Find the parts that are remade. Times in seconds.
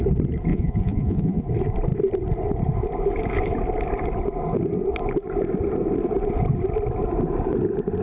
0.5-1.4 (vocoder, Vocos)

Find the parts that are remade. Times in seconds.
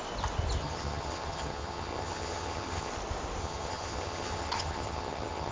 0.6-2.9 (vocoder, HiFi-GAN); 3.4-5.5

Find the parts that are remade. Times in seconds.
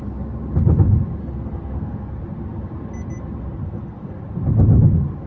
1.2-2.2 (codec, SNAC); 3.6-4.2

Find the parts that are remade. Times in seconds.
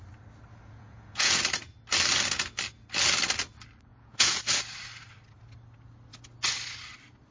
0.5-1.4 (vocoder, Vocos); 3.9-4.4